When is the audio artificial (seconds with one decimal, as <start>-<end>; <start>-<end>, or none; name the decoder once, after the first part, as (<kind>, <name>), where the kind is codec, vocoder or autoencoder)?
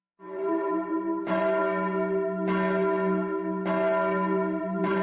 0.0-1.6 (vocoder, BigVGAN v2); 4.6-5.0